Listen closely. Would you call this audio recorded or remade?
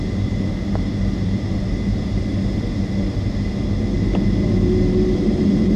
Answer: recorded